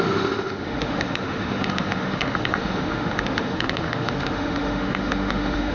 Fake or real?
fake